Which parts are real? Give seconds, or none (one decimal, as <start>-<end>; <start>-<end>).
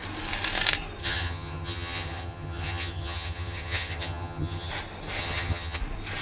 0.0-1.0; 4.7-5.2; 5.8-6.2